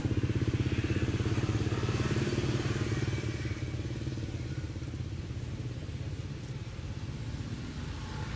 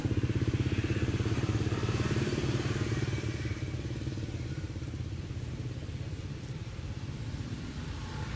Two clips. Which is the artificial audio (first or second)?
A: second